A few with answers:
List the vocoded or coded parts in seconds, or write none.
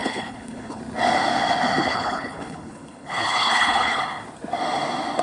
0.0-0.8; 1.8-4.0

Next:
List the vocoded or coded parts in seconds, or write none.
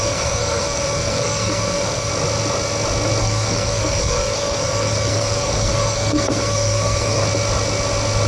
0.0-2.1; 3.2-7.2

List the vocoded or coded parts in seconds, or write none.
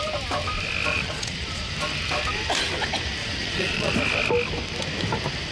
0.9-1.7; 3.2-3.9